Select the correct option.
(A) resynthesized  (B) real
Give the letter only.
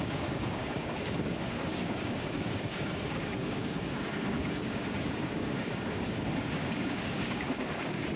A